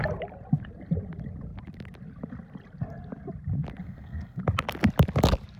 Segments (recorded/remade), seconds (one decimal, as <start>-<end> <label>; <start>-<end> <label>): 0.0-3.8 recorded; 3.8-4.4 remade; 4.4-5.6 recorded